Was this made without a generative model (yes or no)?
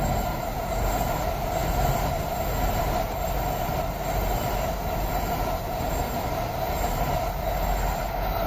yes